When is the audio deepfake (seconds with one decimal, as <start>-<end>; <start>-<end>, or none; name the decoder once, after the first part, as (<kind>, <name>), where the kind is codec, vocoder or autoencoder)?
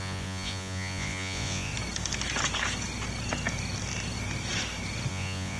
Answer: 0.0-1.7 (vocoder, Vocos); 5.1-5.6